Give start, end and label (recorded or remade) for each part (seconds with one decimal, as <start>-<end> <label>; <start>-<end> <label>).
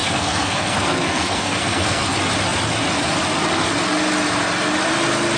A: 0.0-2.1 remade; 2.1-5.4 recorded